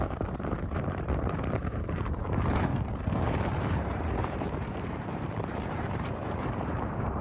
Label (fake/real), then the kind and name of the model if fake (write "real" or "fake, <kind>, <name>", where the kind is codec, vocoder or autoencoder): fake, vocoder, BigVGAN v2